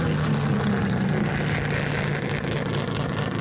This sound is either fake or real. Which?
real